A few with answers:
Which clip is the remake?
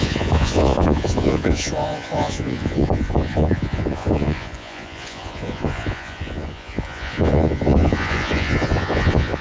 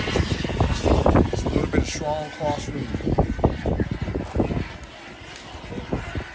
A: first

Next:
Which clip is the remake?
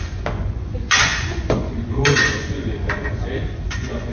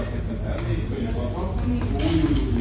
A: first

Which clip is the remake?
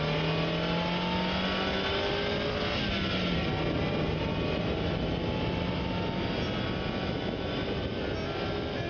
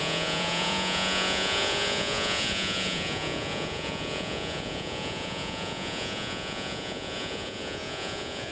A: second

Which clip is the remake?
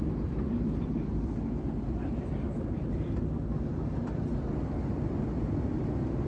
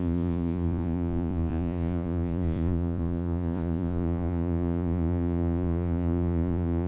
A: second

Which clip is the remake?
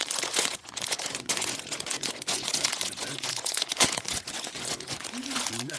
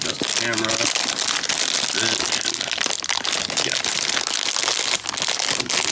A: first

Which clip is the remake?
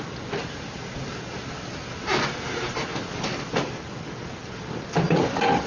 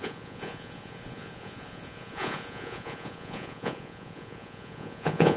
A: second